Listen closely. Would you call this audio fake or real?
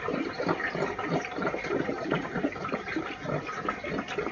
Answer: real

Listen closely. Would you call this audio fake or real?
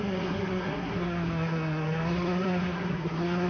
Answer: fake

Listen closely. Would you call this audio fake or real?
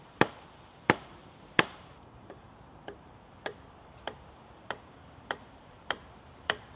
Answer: fake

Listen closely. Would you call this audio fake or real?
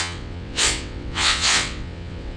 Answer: fake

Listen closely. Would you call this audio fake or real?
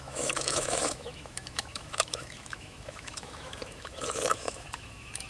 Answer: fake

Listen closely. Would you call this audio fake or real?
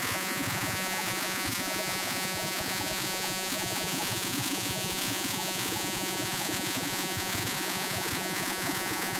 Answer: fake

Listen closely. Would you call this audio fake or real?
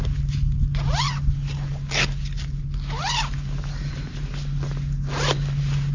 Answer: real